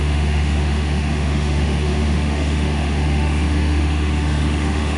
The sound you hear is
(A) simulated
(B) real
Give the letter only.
A